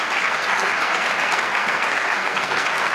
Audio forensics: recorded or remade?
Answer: remade